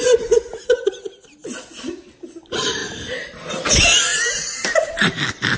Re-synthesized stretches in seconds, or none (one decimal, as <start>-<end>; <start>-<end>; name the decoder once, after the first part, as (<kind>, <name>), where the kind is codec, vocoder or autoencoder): none

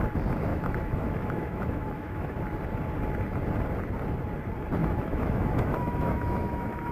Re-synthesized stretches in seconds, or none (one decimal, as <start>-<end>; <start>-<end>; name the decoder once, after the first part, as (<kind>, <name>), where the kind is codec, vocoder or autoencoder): 0.5-2.4 (autoencoder, DAC-VAE); 4.8-6.9

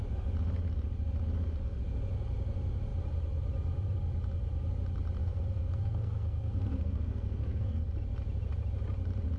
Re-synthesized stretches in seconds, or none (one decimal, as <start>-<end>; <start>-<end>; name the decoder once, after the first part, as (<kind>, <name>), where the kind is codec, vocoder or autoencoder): 5.2-7.8 (codec, SNAC)

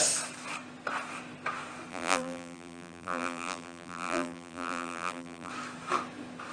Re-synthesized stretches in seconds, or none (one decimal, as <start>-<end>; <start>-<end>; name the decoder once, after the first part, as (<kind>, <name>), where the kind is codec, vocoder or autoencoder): 1.9-5.5 (vocoder, BigVGAN v2)